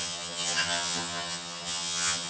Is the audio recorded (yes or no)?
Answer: no